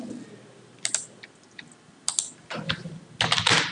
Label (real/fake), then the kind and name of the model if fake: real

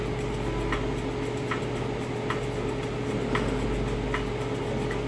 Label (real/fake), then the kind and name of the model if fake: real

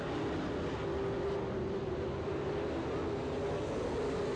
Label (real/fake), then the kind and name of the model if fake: real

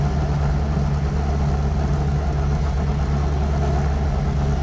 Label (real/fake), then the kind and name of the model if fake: real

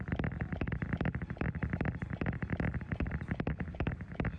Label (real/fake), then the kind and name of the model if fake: real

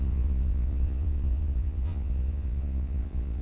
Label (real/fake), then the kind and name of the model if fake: fake, vocoder, Vocos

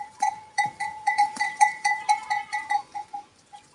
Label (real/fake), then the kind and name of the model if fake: fake, vocoder, Vocos